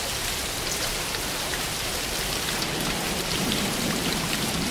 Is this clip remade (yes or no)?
no